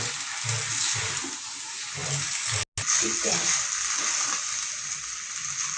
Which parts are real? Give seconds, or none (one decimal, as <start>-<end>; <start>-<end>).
0.0-5.8